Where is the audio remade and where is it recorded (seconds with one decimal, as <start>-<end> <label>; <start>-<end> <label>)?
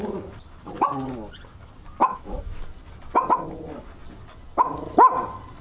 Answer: 0.0-2.0 recorded; 2.0-2.6 remade; 2.6-5.6 recorded